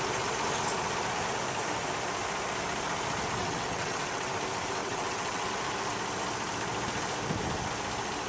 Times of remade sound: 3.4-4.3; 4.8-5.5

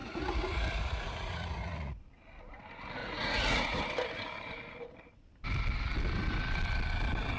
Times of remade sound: 0.0-2.0; 3.0-3.8

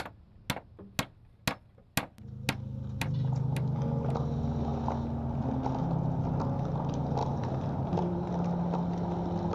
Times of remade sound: 7.2-8.3

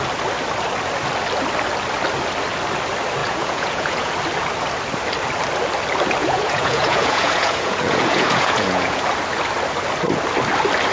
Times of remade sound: 3.2-4.1; 6.2-9.0

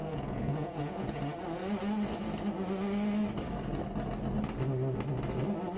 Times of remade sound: 0.0-1.2

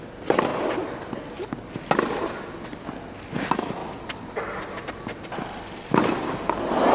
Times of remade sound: none

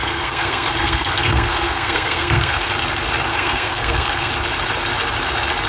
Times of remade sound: 0.0-2.7; 3.3-4.3